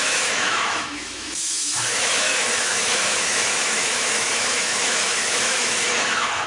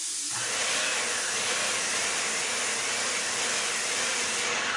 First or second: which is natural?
second